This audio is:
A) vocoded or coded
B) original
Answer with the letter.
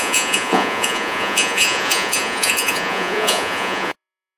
A